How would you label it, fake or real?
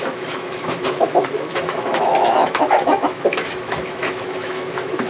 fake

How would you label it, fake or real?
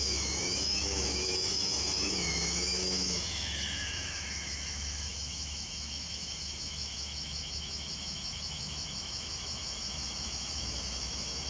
fake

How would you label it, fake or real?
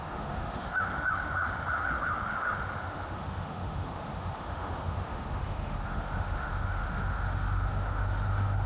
fake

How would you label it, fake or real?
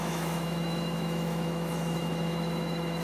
fake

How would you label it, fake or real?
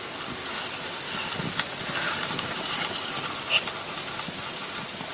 real